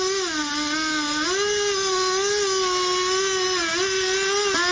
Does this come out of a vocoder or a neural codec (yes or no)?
no